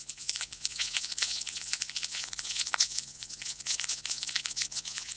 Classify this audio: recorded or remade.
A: remade